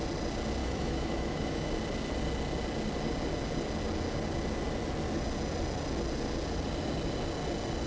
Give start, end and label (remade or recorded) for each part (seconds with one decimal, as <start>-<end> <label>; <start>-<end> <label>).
0.0-0.6 recorded; 0.6-1.7 remade; 1.7-7.9 recorded